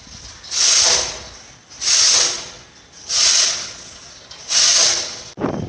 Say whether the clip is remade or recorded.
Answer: recorded